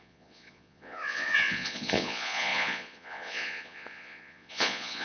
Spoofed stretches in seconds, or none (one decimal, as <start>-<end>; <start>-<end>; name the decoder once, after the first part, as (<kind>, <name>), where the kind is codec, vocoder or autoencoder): 0.0-5.0 (vocoder, Vocos)